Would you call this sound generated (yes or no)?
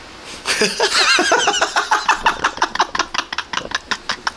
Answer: no